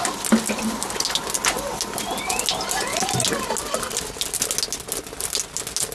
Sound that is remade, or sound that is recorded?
recorded